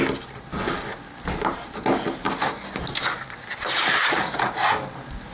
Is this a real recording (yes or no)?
yes